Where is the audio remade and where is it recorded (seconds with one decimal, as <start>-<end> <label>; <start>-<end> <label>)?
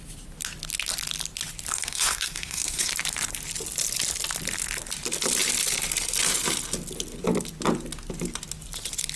0.0-1.7 recorded; 1.7-2.9 remade; 2.9-9.2 recorded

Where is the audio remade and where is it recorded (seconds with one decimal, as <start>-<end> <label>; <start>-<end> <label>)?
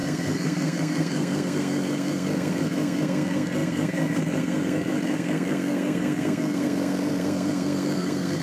0.0-8.4 remade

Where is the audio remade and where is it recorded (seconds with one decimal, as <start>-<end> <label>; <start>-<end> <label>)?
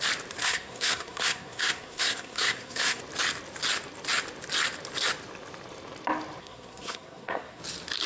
0.0-0.4 recorded; 0.4-3.0 remade; 3.0-6.4 recorded; 6.4-7.6 remade; 7.6-8.1 recorded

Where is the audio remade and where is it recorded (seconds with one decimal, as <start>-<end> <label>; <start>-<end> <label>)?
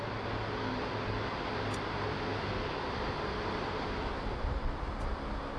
0.0-5.6 recorded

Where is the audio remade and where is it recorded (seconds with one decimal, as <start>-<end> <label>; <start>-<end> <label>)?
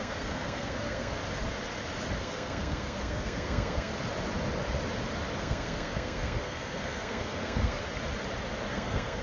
0.0-1.2 remade; 1.2-2.2 recorded; 2.2-3.9 remade; 3.9-5.4 recorded; 5.4-7.8 remade; 7.8-8.7 recorded; 8.7-9.2 remade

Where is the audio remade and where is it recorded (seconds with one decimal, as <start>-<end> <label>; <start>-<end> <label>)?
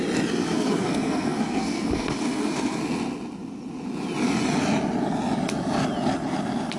0.0-0.4 recorded; 0.4-2.8 remade; 2.8-6.8 recorded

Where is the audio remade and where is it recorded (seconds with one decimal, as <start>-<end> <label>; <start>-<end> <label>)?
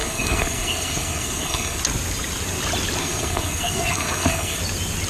0.0-1.8 remade; 1.8-3.0 recorded; 3.0-4.6 remade; 4.6-5.1 recorded